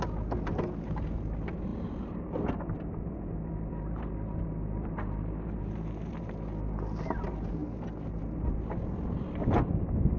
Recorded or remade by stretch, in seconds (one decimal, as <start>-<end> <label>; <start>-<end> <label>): 0.0-10.2 recorded